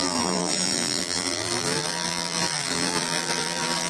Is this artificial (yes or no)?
yes